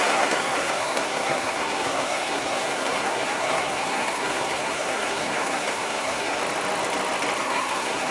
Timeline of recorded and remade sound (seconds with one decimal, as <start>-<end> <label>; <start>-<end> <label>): 0.0-6.4 remade; 6.4-7.4 recorded; 7.4-8.1 remade